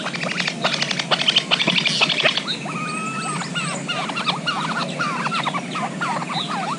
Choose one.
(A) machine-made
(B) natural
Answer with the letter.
B